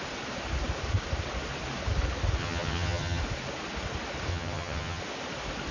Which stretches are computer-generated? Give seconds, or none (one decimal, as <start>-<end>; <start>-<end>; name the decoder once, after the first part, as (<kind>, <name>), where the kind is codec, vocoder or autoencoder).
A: 2.4-3.2 (vocoder, HiFi-GAN); 4.3-5.0